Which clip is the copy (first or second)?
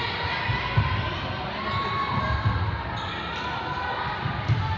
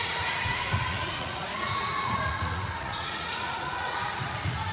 second